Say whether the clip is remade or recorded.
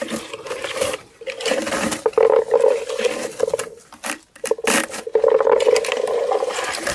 recorded